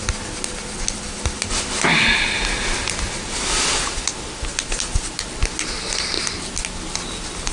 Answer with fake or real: real